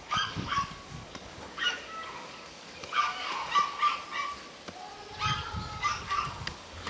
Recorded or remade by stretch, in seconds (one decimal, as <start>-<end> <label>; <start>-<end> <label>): 0.0-3.5 remade; 3.5-5.6 recorded; 5.6-6.9 remade